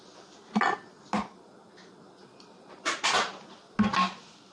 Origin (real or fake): real